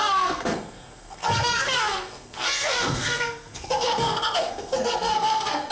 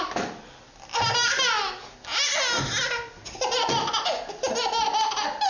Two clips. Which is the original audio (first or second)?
second